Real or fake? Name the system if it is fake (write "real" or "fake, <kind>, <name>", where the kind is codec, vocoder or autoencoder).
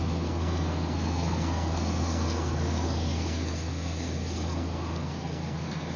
fake, codec, SNAC